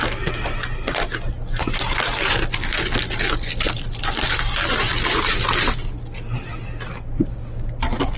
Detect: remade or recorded recorded